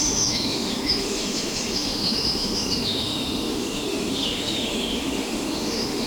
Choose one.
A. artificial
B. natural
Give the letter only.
A